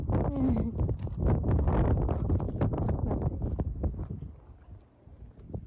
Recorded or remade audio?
recorded